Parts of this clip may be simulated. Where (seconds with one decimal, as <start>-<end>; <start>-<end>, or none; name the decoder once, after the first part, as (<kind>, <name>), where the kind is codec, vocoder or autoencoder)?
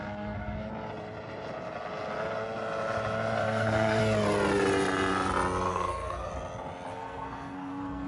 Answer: 0.0-0.7 (codec, SNAC); 3.4-4.0; 5.7-6.3; 6.9-8.1